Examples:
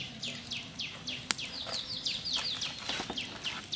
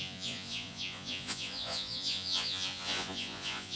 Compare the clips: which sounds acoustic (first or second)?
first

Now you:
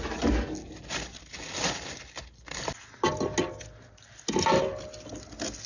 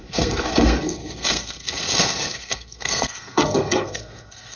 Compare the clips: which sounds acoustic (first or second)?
first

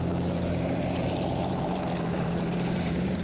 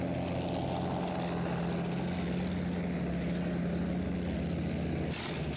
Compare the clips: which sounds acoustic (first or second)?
second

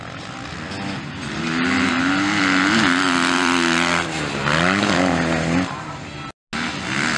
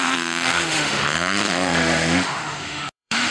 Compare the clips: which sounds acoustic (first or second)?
first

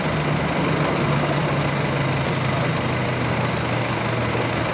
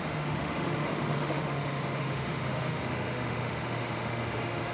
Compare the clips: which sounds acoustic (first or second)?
first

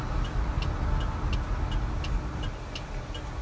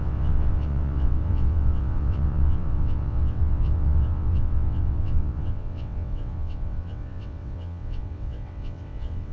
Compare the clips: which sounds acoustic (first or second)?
first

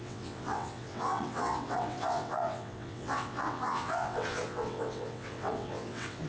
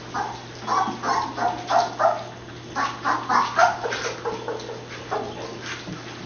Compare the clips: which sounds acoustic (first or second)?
second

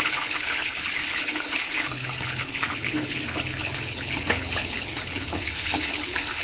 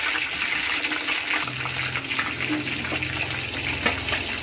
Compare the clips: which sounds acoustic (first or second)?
second